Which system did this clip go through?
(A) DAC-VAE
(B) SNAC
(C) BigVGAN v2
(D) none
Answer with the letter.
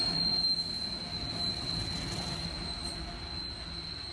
D